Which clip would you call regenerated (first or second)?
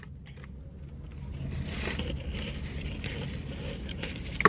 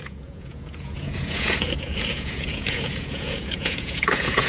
second